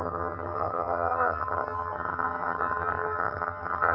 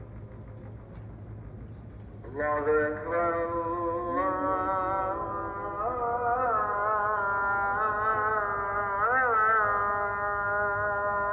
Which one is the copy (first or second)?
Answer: first